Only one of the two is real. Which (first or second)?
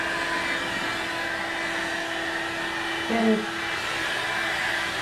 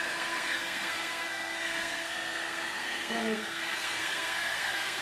first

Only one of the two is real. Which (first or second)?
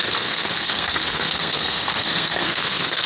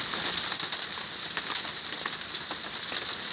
second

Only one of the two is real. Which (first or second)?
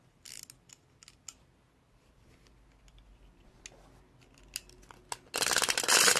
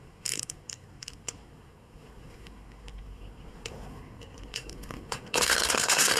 first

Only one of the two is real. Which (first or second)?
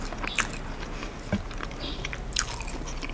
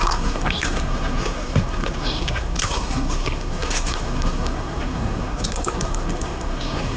first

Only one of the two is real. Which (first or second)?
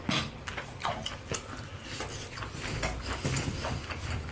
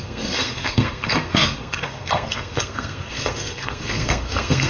first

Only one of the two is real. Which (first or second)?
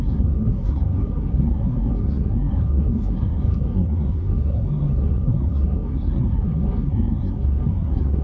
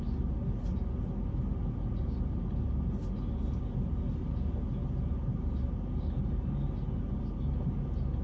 second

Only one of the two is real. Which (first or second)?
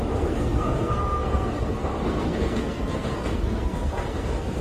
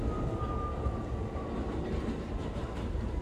second